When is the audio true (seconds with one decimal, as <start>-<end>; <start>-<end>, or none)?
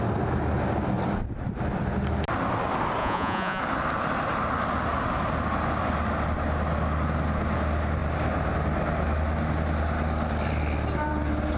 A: 0.0-3.0; 3.6-11.6